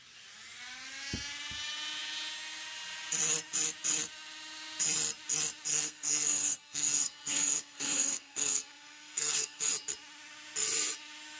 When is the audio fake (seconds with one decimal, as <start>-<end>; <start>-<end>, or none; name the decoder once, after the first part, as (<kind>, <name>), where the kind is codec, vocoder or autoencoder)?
5.7-9.7 (codec, SNAC)

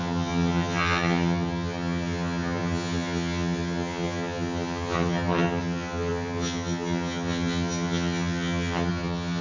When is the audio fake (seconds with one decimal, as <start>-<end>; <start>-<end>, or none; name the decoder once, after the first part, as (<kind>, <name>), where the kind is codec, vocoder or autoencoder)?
0.0-9.4 (vocoder, HiFi-GAN)

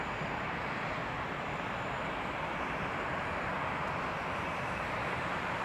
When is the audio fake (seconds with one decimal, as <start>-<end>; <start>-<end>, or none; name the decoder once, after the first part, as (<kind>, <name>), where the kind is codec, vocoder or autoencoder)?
0.0-1.0 (vocoder, BigVGAN v2); 4.4-5.6

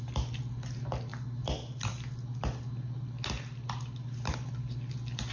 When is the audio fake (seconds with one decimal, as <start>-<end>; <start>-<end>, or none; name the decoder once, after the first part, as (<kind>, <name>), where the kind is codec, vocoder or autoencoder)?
none